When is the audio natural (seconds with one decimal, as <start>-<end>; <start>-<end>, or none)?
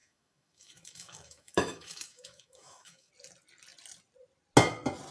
3.1-5.1